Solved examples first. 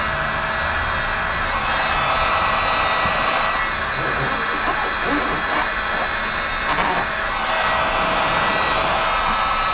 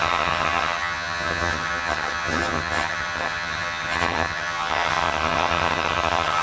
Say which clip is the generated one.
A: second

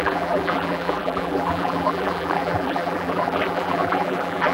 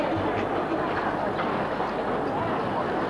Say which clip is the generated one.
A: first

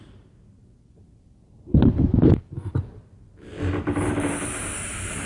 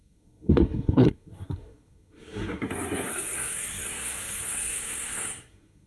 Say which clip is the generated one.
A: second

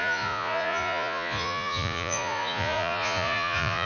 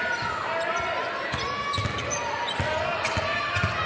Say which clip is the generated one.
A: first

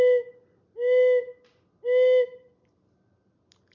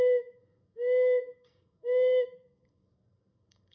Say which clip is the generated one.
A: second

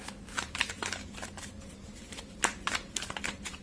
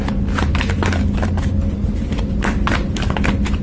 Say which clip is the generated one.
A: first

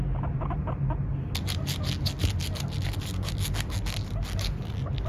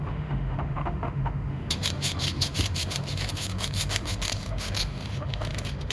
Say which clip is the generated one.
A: second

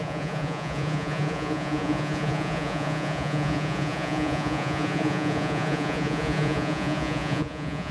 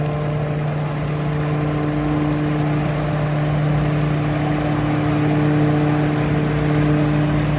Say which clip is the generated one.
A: first